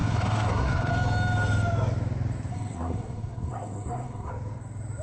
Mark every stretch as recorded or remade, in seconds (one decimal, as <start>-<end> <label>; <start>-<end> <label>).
0.0-0.9 remade; 0.9-2.5 recorded; 2.5-4.3 remade; 4.3-5.0 recorded